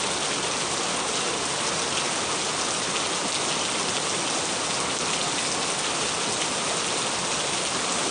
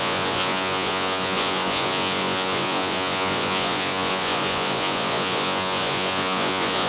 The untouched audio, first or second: first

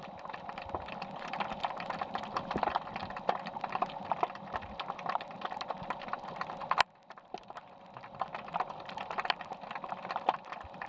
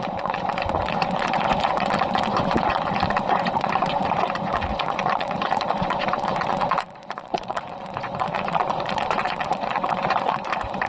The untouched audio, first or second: first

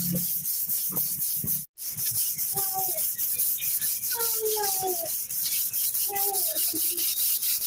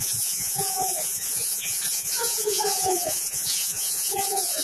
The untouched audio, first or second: first